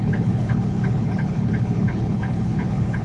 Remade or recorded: remade